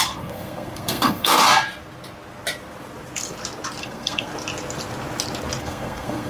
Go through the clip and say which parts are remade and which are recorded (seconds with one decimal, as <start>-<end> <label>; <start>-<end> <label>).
0.0-1.4 remade; 1.4-3.8 recorded; 3.8-4.3 remade; 4.3-5.6 recorded; 5.6-6.3 remade